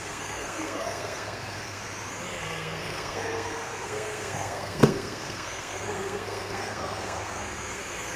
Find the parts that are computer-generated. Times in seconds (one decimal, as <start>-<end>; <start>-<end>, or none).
0.0-1.8; 2.4-8.2